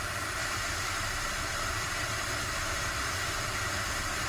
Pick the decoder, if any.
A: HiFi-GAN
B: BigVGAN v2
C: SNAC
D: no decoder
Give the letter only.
B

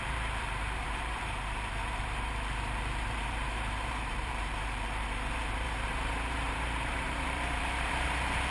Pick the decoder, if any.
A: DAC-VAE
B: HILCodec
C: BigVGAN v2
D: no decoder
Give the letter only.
C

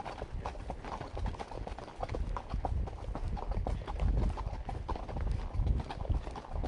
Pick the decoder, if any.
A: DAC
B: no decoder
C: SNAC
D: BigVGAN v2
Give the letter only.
B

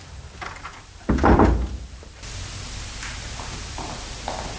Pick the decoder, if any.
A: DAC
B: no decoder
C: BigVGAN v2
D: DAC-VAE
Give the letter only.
C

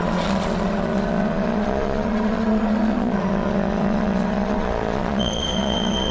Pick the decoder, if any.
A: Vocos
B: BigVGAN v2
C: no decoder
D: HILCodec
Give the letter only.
A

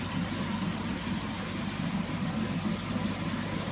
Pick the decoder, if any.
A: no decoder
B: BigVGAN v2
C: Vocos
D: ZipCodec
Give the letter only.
A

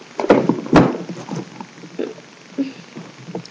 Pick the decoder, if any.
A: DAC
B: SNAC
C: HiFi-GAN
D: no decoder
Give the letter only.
D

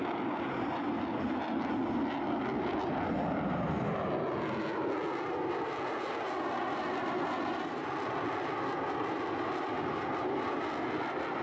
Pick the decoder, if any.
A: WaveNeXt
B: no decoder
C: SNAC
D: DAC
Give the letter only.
B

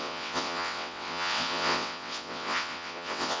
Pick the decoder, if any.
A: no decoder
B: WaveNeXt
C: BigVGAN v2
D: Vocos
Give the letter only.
B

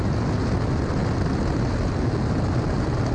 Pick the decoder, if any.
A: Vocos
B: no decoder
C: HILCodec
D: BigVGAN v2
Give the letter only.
B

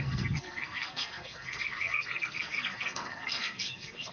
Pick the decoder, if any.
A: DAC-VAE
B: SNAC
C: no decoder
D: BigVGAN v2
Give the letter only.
B